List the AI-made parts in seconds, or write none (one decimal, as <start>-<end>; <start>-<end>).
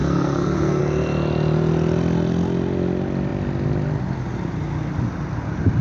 0.0-0.8